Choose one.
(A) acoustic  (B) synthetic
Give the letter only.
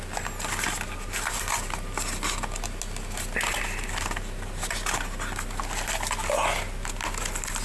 A